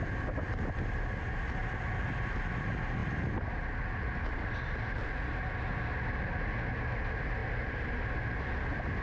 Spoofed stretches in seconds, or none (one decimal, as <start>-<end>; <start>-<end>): none

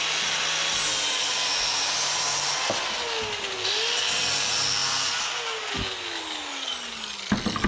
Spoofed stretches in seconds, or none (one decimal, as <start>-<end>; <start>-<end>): none

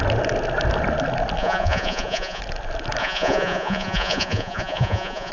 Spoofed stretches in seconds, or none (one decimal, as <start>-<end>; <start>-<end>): 1.4-2.4; 3.0-5.3

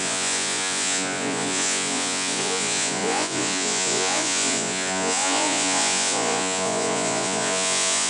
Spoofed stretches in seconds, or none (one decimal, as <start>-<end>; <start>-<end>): 0.0-8.1

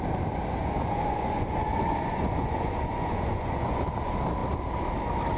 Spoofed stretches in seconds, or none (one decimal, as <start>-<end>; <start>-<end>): 0.6-3.8

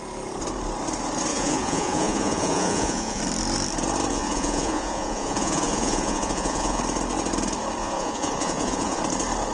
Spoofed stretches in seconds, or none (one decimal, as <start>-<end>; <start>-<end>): 1.3-3.2; 4.1-6.8; 7.8-9.0

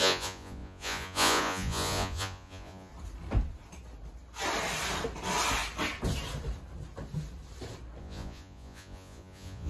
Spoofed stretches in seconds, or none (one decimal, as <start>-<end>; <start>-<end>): 0.0-2.9; 8.0-9.7

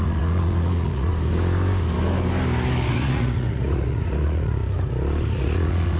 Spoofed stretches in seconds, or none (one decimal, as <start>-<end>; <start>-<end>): 0.0-1.1; 2.9-4.6; 5.3-6.0